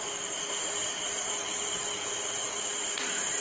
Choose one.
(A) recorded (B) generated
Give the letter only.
A